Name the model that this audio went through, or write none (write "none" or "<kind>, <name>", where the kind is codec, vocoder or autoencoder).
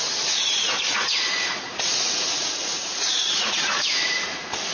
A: vocoder, Vocos